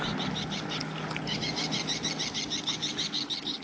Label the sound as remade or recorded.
recorded